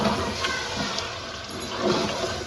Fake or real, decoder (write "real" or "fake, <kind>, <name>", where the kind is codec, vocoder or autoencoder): real